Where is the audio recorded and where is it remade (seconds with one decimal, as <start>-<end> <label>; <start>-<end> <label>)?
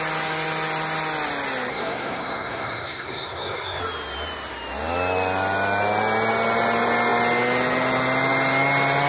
0.0-1.7 recorded; 1.7-3.8 remade; 3.8-9.1 recorded